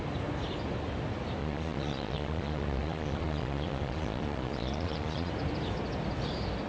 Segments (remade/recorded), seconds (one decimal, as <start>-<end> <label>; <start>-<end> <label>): 0.0-1.4 recorded; 1.4-5.3 remade; 5.3-6.7 recorded